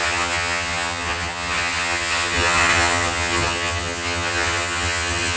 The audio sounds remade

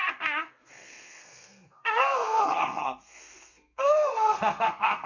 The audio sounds remade